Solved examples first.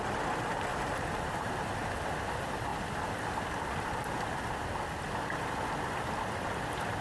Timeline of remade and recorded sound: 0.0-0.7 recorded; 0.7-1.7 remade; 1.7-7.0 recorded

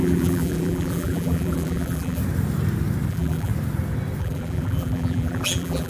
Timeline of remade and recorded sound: 0.0-2.2 remade; 2.2-3.1 recorded; 3.1-3.5 remade; 3.5-4.2 recorded; 4.2-5.9 remade

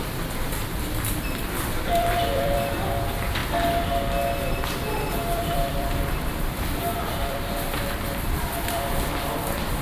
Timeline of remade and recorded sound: 0.0-3.4 remade; 3.4-5.1 recorded; 5.1-9.8 remade

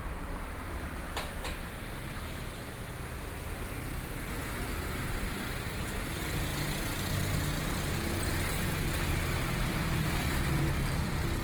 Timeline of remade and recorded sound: 0.0-1.0 remade; 1.0-5.4 recorded; 5.4-6.5 remade; 6.5-9.6 recorded; 9.6-11.4 remade